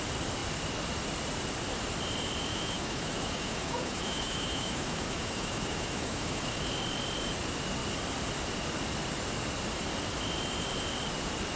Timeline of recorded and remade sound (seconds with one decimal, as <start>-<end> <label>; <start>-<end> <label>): 0.0-2.5 recorded; 2.5-6.7 remade; 6.7-11.6 recorded